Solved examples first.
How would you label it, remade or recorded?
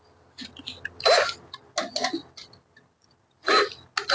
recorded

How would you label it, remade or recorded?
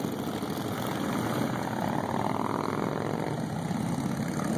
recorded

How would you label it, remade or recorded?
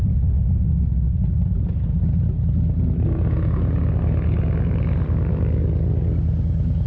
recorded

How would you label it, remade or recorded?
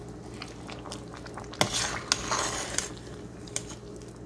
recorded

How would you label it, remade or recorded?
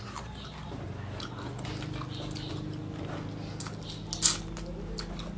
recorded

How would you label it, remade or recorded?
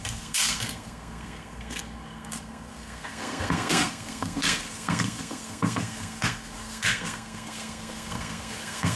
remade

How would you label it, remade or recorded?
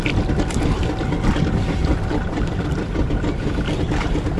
recorded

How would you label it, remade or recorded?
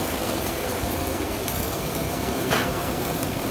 remade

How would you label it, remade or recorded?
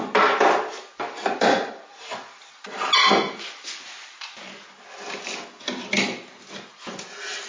recorded